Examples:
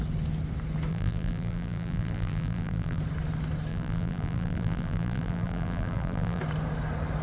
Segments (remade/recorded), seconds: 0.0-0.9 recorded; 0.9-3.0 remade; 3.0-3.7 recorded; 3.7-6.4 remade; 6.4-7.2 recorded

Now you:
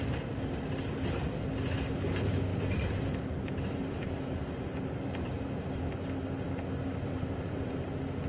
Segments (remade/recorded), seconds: 0.0-2.5 recorded; 2.5-5.8 remade; 5.8-7.1 recorded; 7.1-7.7 remade; 7.7-8.3 recorded

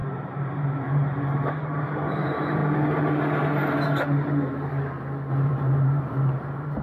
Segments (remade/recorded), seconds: 0.0-2.6 remade; 2.6-5.3 recorded; 5.3-6.8 remade

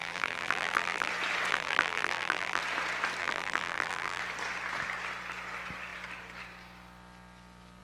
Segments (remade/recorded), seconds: 0.0-1.1 remade; 1.1-1.5 recorded; 1.5-2.6 remade; 2.6-3.2 recorded; 3.2-4.2 remade; 4.2-7.8 recorded